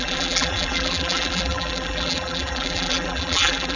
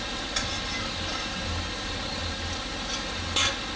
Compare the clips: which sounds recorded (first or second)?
second